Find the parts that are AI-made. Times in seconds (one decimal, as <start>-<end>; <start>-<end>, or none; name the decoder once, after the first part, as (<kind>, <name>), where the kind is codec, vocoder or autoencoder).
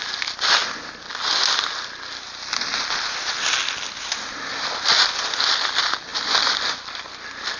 none